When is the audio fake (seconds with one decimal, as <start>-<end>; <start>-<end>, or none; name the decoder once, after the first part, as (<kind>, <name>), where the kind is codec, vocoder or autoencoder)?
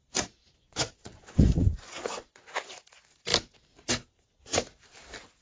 0.6-2.7 (vocoder, Vocos)